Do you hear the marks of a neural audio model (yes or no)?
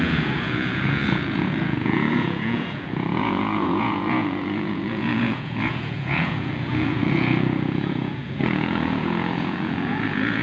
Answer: yes